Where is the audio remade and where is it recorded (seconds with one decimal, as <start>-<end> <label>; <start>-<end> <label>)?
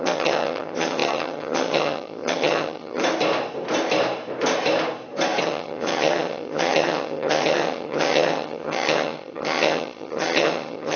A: 0.0-3.0 remade; 3.0-5.4 recorded; 5.4-11.0 remade